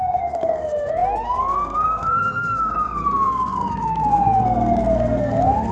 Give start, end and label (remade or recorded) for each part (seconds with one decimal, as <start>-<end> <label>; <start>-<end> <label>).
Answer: 0.0-5.7 remade